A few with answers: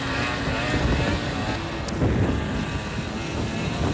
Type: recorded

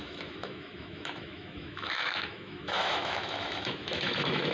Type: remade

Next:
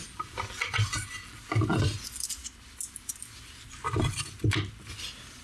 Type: recorded